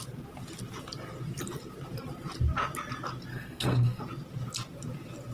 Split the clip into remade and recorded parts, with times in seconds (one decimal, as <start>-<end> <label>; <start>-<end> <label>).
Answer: 0.0-3.3 recorded; 3.3-4.0 remade; 4.0-5.3 recorded

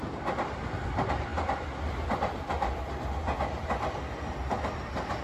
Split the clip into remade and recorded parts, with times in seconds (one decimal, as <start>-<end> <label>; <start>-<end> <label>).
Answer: 0.0-5.2 recorded

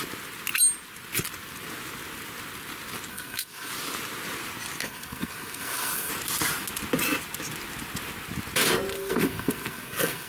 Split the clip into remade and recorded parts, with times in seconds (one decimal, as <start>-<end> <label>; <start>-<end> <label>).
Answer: 0.0-3.1 recorded; 3.1-3.7 remade; 3.7-4.8 recorded; 4.8-6.1 remade; 6.1-8.9 recorded; 8.9-10.3 remade

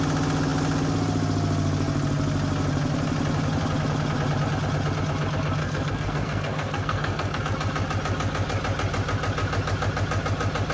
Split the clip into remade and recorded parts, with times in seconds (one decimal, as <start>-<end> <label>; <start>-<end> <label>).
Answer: 0.0-5.6 recorded; 5.6-7.4 remade; 7.4-10.7 recorded

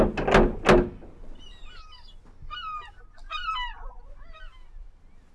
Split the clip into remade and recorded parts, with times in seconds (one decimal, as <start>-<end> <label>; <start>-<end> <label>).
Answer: 0.0-5.3 recorded

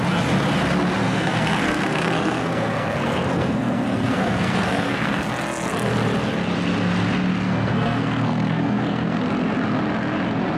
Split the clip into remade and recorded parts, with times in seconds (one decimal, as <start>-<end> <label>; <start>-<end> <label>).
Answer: 0.0-1.0 recorded; 1.0-5.3 remade; 5.3-7.3 recorded; 7.3-9.2 remade; 9.2-10.6 recorded

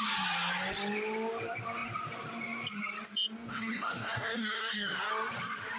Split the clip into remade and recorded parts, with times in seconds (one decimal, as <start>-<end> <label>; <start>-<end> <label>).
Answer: 0.0-3.5 recorded; 3.5-5.1 remade; 5.1-5.8 recorded